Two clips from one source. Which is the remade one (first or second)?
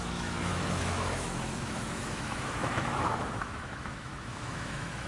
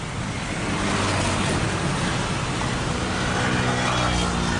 first